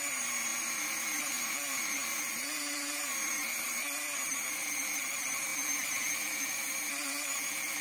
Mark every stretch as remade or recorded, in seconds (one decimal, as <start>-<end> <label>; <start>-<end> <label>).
0.0-7.8 remade